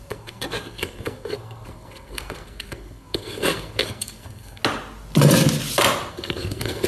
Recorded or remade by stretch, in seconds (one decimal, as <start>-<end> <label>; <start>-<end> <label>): 0.0-4.6 remade; 4.6-6.1 recorded; 6.1-6.9 remade